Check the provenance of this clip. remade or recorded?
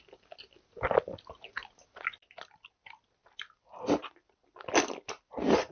recorded